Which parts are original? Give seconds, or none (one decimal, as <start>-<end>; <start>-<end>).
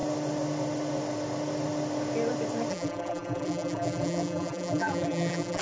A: 0.0-2.7